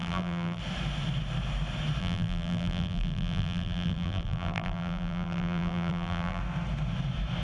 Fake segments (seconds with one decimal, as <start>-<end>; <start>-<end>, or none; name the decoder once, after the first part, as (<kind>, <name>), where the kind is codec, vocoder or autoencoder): 0.0-0.6 (vocoder, BigVGAN v2); 2.0-6.4